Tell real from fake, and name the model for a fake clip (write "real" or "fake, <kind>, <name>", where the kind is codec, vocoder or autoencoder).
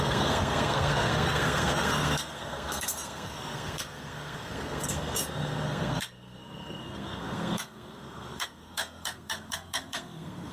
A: fake, codec, SNAC